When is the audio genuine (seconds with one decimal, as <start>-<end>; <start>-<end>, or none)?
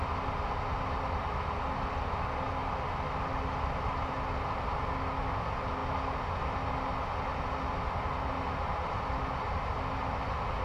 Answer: 0.0-10.6